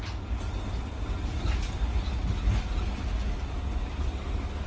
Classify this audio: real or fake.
real